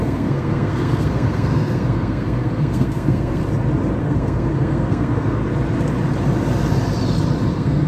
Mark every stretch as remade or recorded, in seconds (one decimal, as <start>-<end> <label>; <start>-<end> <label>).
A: 0.0-3.4 remade; 3.4-4.0 recorded; 4.0-5.4 remade; 5.4-7.5 recorded; 7.5-7.9 remade